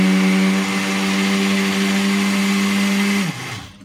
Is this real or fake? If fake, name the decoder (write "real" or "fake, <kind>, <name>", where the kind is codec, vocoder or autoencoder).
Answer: real